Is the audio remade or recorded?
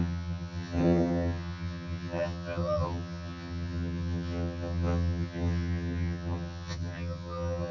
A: remade